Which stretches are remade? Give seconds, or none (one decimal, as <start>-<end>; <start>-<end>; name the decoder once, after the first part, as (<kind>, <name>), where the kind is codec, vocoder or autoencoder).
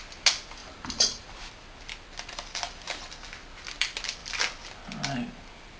0.6-1.5 (vocoder, BigVGAN v2)